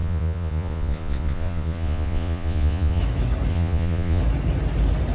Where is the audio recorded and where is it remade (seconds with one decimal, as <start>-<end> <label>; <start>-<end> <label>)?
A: 0.0-3.0 remade; 3.0-3.5 recorded; 3.5-4.2 remade; 4.2-5.1 recorded